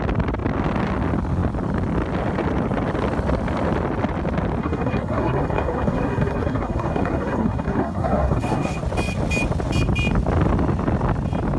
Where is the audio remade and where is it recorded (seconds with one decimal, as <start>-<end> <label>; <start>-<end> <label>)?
0.0-4.6 recorded; 4.6-8.8 remade; 8.8-11.6 recorded